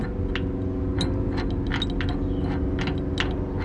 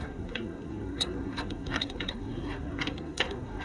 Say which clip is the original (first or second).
first